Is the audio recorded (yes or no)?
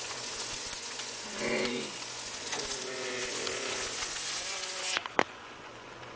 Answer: no